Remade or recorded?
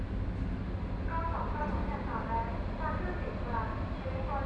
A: recorded